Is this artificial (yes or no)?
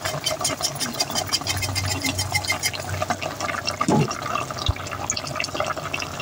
no